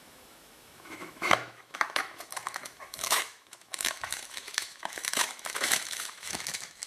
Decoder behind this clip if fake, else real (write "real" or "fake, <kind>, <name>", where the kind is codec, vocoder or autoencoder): fake, autoencoder, DAC-VAE